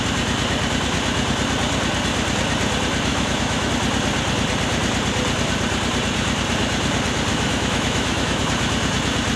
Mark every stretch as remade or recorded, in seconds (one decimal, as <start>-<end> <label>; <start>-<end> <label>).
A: 0.0-3.1 recorded; 3.1-3.7 remade; 3.7-7.3 recorded; 7.3-8.4 remade; 8.4-9.4 recorded